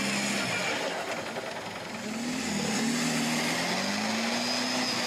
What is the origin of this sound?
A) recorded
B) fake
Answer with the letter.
A